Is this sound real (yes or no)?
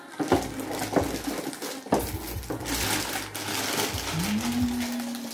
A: yes